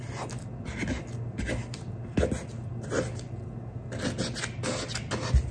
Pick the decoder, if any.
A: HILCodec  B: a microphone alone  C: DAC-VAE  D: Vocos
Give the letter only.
B